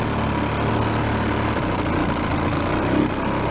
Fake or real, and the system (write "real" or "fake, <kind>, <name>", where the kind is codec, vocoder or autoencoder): real